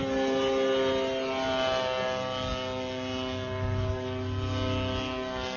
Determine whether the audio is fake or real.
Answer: real